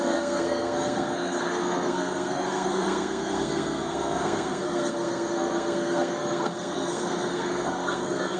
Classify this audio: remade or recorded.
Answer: remade